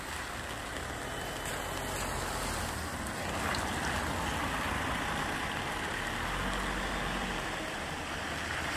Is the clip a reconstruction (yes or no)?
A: no